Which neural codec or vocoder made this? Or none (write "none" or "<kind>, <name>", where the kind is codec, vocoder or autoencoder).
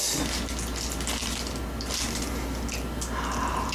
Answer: none